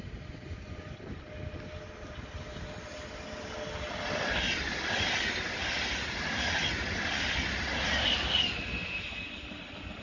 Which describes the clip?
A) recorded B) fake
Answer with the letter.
A